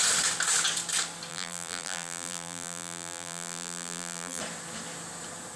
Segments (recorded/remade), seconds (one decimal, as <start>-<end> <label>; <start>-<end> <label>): 0.0-1.3 recorded; 1.3-4.4 remade; 4.4-5.6 recorded